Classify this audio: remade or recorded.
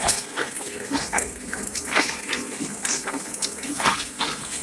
remade